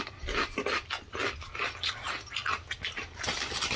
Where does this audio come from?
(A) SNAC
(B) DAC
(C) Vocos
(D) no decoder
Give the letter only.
D